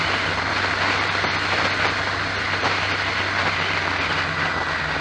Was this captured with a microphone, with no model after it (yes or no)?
yes